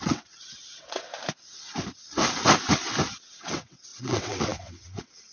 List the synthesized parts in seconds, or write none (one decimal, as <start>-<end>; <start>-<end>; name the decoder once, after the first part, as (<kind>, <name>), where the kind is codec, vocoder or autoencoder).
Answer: 0.0-1.1 (vocoder, WaveNeXt); 3.1-5.3